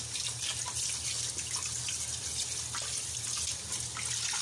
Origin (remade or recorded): recorded